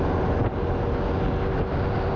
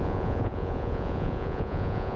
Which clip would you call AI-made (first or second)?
second